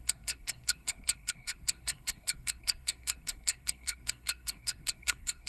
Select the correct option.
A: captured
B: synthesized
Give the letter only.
B